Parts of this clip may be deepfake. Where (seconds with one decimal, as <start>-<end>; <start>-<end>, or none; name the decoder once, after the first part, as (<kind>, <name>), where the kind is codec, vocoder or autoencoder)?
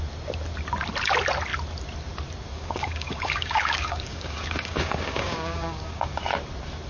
2.5-6.2 (codec, DAC)